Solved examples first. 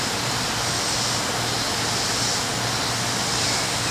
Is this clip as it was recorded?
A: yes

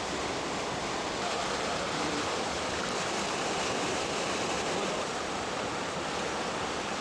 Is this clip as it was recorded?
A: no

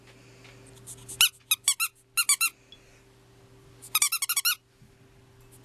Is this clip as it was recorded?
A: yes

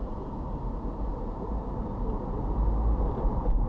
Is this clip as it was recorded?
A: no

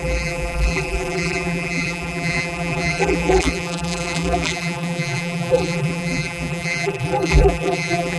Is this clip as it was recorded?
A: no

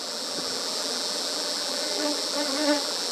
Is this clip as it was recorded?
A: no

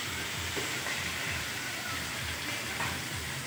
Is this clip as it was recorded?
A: no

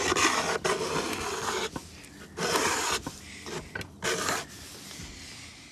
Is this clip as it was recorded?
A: yes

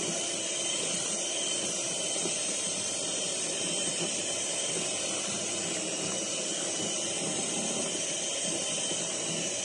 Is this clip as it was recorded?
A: no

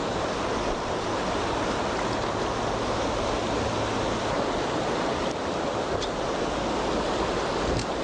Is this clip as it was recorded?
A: yes